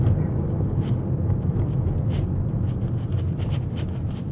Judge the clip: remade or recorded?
recorded